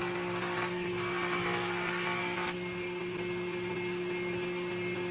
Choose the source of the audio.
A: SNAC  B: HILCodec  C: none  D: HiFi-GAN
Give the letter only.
C